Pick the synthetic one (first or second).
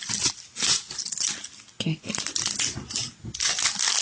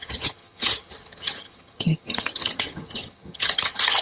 second